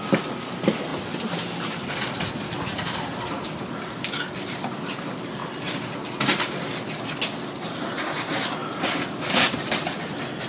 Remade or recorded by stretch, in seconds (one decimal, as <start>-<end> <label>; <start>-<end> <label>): 0.0-10.5 recorded